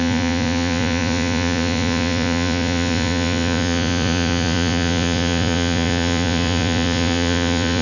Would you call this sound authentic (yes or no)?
no